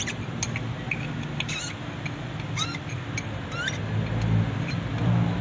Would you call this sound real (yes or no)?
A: yes